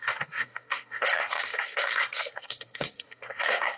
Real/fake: fake